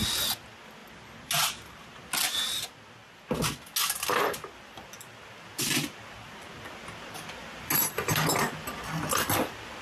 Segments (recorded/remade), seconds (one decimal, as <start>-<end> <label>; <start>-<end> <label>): 0.0-9.8 recorded